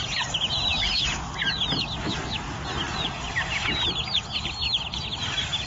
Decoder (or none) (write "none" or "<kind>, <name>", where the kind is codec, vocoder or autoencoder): none